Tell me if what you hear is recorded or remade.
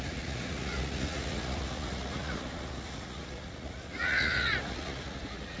remade